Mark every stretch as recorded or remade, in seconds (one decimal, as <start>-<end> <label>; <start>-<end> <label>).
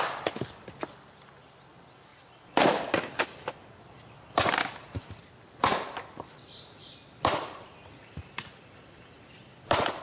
0.0-10.0 recorded